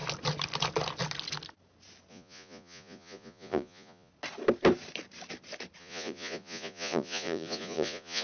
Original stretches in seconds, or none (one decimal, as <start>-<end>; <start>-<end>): 0.0-2.1; 4.1-5.8